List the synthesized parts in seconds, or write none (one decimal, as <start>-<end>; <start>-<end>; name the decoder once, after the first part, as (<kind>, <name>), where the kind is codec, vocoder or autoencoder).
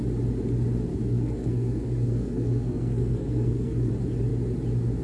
0.9-3.9 (codec, SNAC)